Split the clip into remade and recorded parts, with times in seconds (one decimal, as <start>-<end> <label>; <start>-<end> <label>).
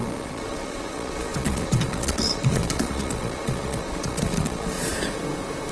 0.0-4.9 remade; 4.9-5.7 recorded